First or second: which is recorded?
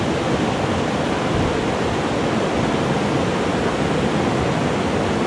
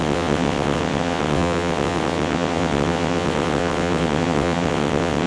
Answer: first